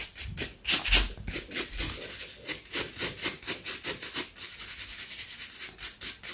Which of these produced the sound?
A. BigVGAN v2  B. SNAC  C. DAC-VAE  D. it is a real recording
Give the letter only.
D